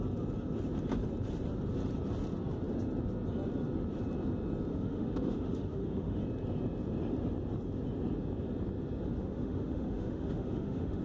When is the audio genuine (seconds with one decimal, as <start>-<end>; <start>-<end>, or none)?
0.0-4.7; 6.2-9.2

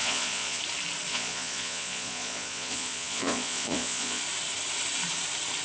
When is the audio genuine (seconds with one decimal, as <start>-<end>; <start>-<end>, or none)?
0.6-1.1; 4.2-5.6

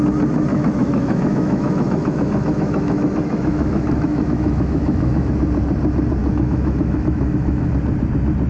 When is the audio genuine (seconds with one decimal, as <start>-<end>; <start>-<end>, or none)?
0.0-0.5; 5.3-6.2; 7.7-8.5

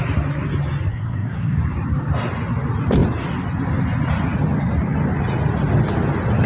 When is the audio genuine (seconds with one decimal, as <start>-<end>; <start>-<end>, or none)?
0.0-0.9; 1.6-6.5

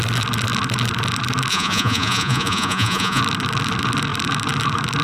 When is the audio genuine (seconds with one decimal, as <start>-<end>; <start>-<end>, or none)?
0.0-1.5; 3.2-5.0

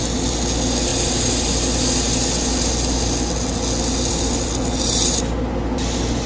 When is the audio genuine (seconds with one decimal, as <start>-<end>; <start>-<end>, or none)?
0.0-6.3

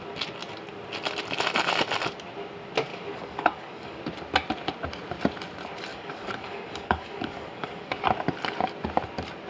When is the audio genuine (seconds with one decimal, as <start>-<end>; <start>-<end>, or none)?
0.0-2.9; 4.0-5.9; 8.0-9.5

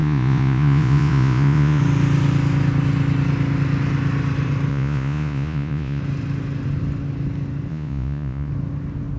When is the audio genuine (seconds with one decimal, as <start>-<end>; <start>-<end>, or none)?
1.8-4.7; 6.0-7.7; 8.5-9.2